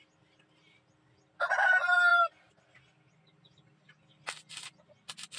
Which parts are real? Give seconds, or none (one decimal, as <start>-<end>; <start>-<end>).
0.0-5.4